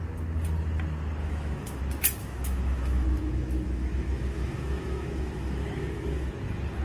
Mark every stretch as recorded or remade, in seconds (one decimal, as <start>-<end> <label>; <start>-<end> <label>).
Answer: 0.0-1.2 recorded; 1.2-1.8 remade; 1.8-2.2 recorded; 2.2-6.3 remade; 6.3-6.8 recorded